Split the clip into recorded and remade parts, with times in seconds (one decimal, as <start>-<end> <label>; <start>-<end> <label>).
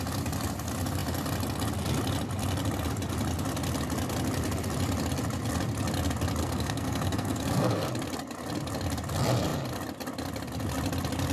0.0-6.4 recorded; 6.4-7.9 remade; 7.9-11.3 recorded